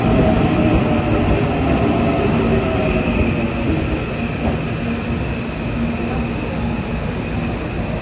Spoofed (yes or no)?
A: no